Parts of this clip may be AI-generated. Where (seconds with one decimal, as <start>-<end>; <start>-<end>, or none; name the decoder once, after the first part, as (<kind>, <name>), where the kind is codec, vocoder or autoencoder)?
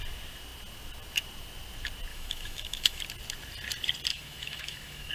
2.1-3.0 (autoencoder, DAC-VAE); 4.1-5.1